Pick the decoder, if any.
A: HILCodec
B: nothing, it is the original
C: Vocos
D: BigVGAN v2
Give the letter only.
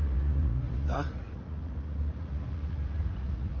C